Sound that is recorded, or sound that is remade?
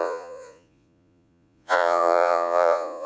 remade